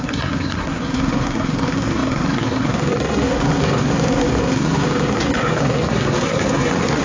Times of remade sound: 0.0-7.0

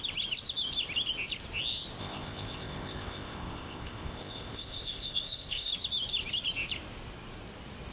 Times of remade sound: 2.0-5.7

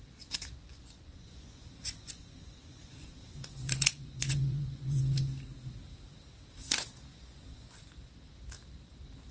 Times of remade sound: 0.7-5.2; 7.1-7.8